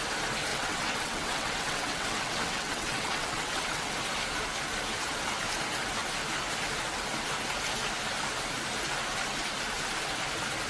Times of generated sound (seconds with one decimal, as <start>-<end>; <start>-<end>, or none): 0.5-3.9